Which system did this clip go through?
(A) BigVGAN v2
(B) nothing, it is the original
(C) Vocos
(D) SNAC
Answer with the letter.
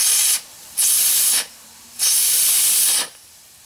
B